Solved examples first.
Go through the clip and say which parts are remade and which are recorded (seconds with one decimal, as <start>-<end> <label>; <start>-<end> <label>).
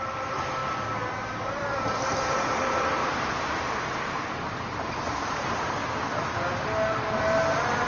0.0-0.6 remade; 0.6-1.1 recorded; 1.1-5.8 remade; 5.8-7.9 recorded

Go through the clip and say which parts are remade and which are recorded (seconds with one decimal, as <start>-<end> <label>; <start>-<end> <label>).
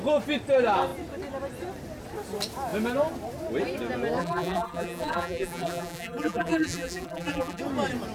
0.0-4.2 recorded; 4.2-7.6 remade; 7.6-8.1 recorded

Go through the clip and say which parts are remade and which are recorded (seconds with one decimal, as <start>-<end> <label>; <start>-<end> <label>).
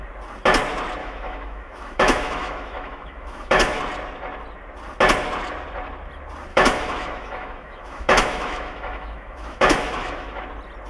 0.0-1.0 recorded; 1.0-3.8 remade; 3.8-6.5 recorded; 6.5-10.4 remade; 10.4-10.9 recorded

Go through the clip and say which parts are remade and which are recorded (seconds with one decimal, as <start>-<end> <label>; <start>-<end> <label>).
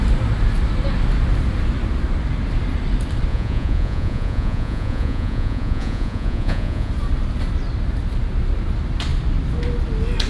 0.0-3.3 recorded; 3.3-6.9 remade; 6.9-10.3 recorded